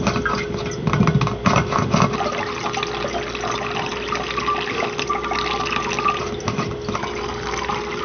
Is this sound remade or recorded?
recorded